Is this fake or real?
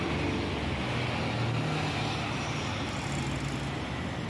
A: real